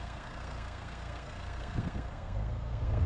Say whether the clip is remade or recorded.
remade